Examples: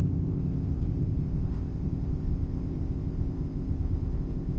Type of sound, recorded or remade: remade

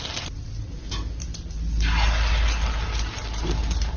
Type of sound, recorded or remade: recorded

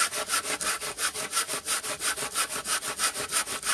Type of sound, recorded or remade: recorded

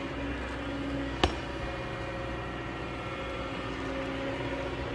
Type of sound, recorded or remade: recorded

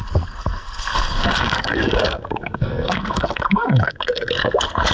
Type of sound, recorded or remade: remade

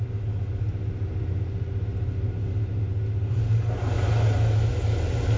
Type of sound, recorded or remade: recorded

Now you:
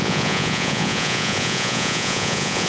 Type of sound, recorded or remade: remade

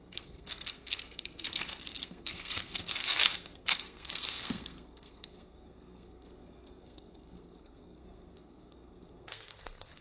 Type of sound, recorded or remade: remade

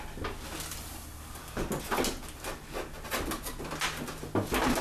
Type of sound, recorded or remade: recorded